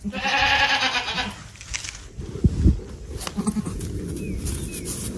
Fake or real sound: real